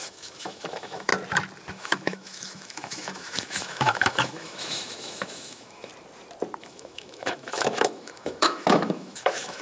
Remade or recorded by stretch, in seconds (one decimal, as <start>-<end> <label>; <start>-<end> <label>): 0.0-1.1 remade; 1.1-1.7 recorded; 1.7-5.9 remade; 5.9-6.6 recorded; 6.6-9.6 remade